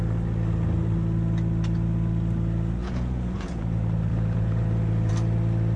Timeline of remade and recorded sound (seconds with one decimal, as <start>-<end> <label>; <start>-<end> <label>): 0.0-2.8 recorded; 2.8-3.6 remade; 3.6-4.1 recorded; 4.1-5.1 remade; 5.1-5.8 recorded